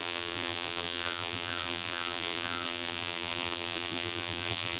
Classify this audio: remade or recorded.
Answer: remade